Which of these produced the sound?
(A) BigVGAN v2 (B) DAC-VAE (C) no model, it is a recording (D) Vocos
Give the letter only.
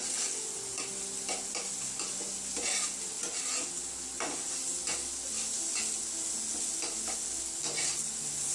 C